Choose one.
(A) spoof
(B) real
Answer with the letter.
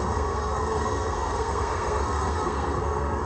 A